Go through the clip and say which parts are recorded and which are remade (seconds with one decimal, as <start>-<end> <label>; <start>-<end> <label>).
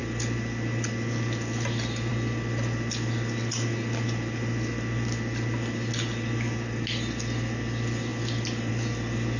0.0-9.4 recorded